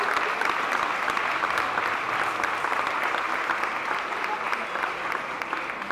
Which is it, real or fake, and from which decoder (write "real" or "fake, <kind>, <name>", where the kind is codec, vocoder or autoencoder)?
real